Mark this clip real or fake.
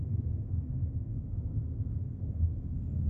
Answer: fake